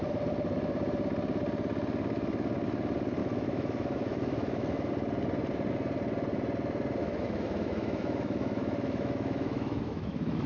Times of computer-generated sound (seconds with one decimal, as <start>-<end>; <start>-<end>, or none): 3.2-4.9; 7.0-10.5